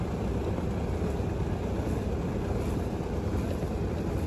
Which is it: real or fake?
real